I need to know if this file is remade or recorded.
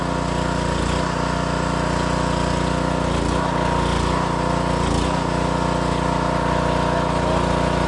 recorded